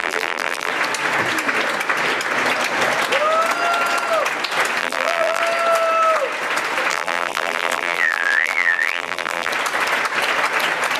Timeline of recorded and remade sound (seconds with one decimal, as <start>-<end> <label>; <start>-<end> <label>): 0.0-0.7 remade; 0.7-4.8 recorded; 4.8-5.4 remade; 5.4-6.9 recorded; 6.9-9.5 remade; 9.5-11.0 recorded